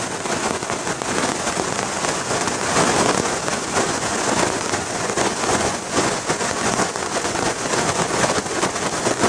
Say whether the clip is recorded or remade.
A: remade